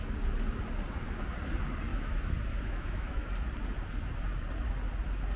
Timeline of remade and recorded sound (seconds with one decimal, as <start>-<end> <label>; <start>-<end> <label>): 0.0-1.9 recorded; 1.9-3.3 remade; 3.3-5.4 recorded